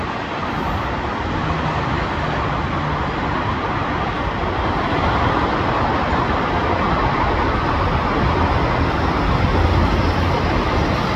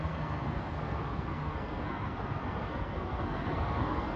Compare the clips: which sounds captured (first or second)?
first